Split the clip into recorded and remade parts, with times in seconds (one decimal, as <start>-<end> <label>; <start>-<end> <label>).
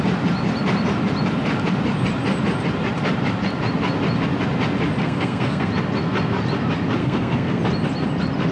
0.0-5.0 recorded; 5.0-5.7 remade; 5.7-7.0 recorded; 7.0-7.6 remade; 7.6-8.5 recorded